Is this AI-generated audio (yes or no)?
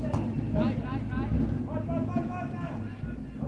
no